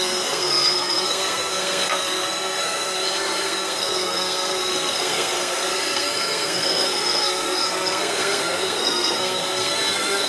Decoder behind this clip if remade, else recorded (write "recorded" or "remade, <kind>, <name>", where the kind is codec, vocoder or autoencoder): remade, codec, SNAC